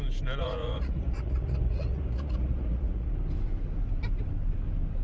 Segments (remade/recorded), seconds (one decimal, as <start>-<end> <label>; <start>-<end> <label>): 0.0-0.4 recorded; 0.4-3.1 remade; 3.1-5.0 recorded